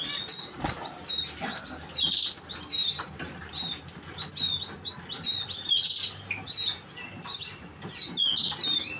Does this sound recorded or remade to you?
recorded